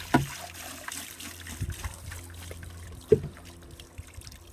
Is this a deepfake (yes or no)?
no